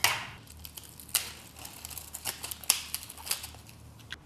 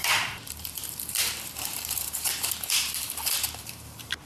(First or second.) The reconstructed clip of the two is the second